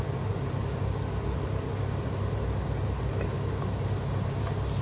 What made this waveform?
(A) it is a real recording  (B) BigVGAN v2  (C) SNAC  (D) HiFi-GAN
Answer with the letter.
A